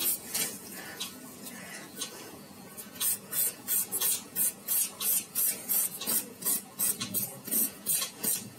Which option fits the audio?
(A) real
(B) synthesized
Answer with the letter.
B